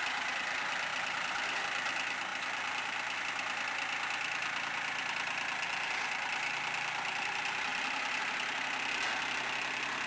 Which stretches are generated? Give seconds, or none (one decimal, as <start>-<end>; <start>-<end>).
0.9-1.6; 2.3-3.2